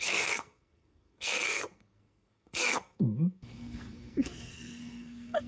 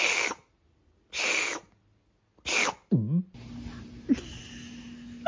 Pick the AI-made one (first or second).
first